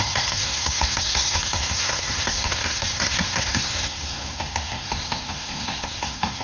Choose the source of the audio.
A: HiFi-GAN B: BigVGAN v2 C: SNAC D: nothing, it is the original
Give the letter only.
C